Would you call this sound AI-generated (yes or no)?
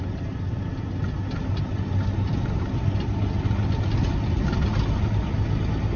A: no